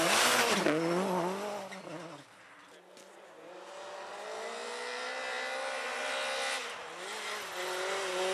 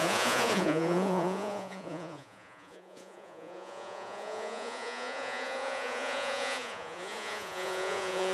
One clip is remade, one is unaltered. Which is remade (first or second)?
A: second